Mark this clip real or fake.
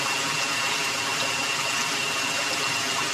real